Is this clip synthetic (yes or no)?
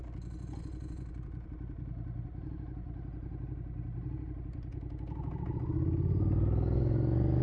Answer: no